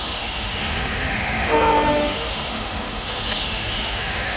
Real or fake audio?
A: fake